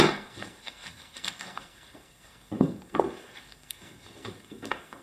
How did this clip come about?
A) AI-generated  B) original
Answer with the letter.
A